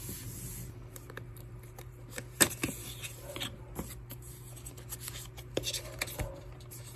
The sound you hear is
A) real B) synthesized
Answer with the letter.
B